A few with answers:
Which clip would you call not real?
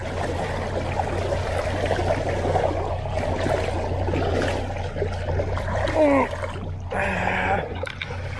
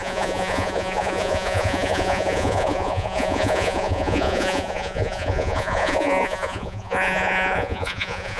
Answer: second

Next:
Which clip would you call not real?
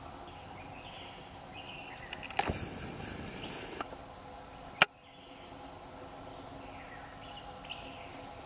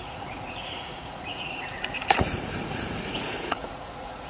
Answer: second